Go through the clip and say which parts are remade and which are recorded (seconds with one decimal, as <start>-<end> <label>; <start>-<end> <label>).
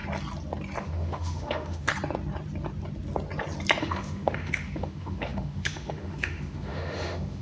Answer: 0.0-0.8 recorded; 0.8-1.9 remade; 1.9-3.8 recorded; 3.8-7.4 remade